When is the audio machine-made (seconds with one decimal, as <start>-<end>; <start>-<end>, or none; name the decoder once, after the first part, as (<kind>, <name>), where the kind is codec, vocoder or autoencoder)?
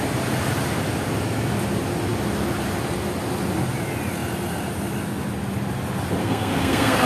6.2-7.1 (codec, SNAC)